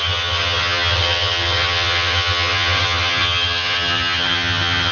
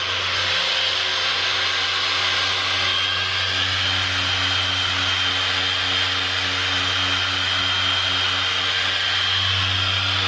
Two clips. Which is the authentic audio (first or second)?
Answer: second